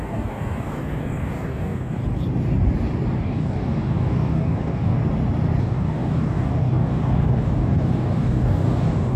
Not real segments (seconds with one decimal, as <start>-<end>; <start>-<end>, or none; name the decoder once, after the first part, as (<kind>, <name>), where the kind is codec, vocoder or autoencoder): 0.0-2.0 (codec, DAC); 3.2-5.0; 5.6-9.2